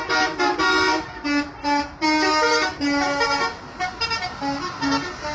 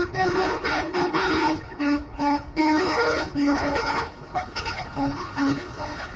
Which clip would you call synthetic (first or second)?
second